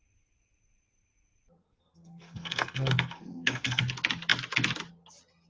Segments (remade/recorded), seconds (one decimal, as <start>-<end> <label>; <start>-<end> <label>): 0.0-1.6 recorded; 1.6-3.8 remade; 3.8-5.5 recorded